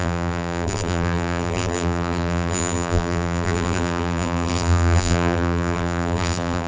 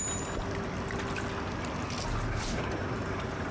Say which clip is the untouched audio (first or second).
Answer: second